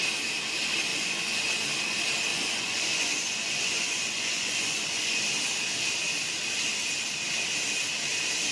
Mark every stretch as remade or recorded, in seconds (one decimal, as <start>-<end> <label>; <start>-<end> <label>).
0.0-0.9 recorded; 0.9-1.4 remade; 1.4-2.3 recorded; 2.3-5.2 remade; 5.2-8.5 recorded